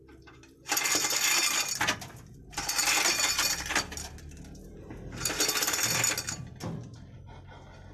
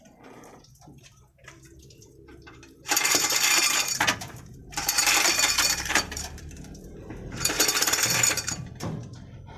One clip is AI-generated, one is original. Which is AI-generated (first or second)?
second